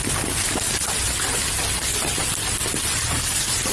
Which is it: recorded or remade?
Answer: recorded